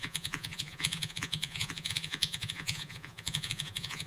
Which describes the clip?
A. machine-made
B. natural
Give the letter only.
A